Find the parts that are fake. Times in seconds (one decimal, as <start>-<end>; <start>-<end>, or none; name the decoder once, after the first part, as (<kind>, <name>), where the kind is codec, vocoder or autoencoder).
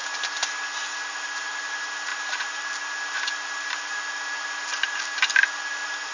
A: 0.9-6.1 (vocoder, BigVGAN v2)